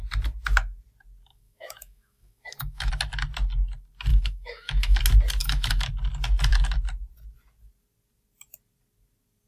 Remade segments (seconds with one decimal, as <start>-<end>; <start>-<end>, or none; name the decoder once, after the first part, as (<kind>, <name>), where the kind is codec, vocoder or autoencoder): 1.3-2.9 (autoencoder, DAC-VAE); 4.1-5.0; 5.4-5.9